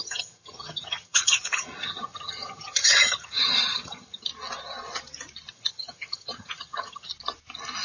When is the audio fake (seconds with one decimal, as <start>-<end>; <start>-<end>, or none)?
0.0-4.3; 5.5-7.1